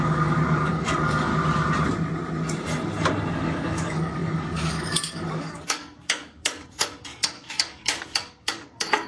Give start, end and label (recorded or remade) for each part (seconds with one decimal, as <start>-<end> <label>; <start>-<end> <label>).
0.0-1.3 remade; 1.3-3.3 recorded; 3.3-9.1 remade